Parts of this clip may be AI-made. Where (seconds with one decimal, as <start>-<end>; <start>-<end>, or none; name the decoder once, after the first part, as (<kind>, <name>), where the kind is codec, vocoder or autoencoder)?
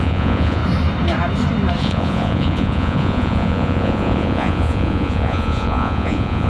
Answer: 0.0-0.6 (vocoder, Vocos); 1.8-6.5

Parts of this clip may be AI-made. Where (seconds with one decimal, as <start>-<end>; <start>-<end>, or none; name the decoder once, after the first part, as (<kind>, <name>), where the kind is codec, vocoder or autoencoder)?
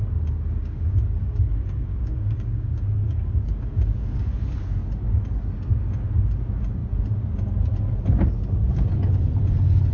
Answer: 0.6-4.3 (codec, DAC)